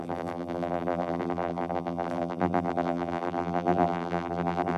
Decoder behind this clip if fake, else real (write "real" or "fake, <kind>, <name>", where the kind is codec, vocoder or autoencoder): fake, vocoder, BigVGAN v2